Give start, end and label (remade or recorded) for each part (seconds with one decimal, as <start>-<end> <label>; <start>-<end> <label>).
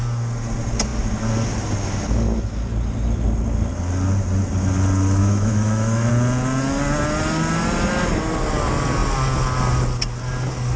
0.0-5.2 recorded; 5.2-6.1 remade; 6.1-10.8 recorded